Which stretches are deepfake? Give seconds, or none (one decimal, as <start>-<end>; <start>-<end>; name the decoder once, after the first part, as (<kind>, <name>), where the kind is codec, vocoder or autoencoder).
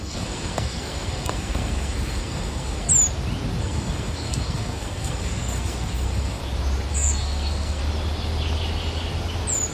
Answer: 0.0-2.9 (codec, SNAC); 3.6-6.4; 6.9-7.8